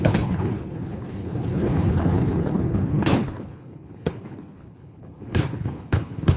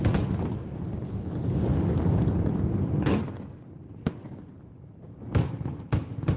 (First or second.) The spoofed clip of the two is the first